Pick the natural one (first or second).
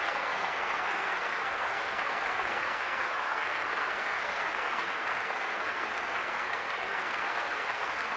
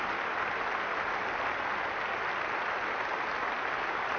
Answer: second